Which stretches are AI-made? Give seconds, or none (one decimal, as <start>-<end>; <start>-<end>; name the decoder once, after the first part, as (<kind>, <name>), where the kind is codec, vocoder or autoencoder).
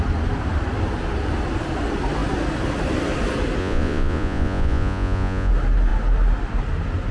3.6-5.5 (vocoder, Vocos)